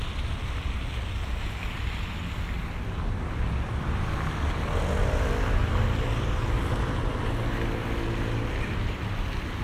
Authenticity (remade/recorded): recorded